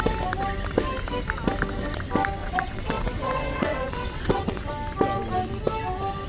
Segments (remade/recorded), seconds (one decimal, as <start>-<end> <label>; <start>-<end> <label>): 0.0-2.4 recorded; 2.4-4.7 remade; 4.7-6.3 recorded